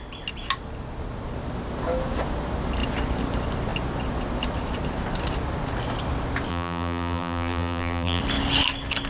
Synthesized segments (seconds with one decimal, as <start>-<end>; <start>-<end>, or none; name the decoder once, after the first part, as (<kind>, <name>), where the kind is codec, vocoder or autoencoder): 6.5-8.2 (vocoder, BigVGAN v2)